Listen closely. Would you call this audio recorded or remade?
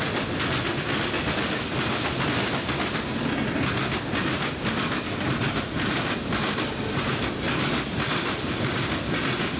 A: recorded